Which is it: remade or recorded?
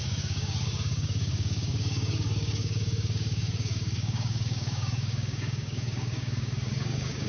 remade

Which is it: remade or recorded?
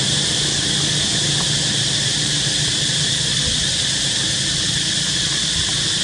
remade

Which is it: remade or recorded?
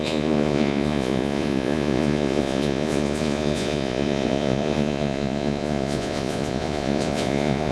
remade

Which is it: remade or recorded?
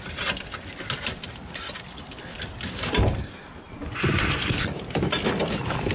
recorded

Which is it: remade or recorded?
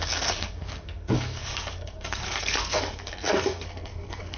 remade